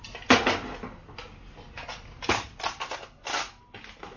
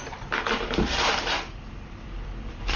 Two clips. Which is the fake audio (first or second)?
second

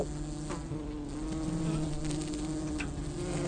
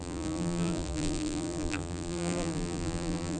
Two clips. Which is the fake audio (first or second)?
second